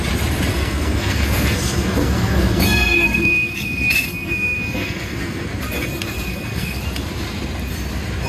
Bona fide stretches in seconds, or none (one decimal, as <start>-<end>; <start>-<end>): 0.0-0.5; 5.5-6.3; 6.8-8.3